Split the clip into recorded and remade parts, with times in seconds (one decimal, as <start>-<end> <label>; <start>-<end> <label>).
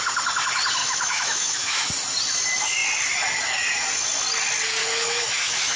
0.0-0.8 recorded; 0.8-1.9 remade; 1.9-4.8 recorded; 4.8-5.8 remade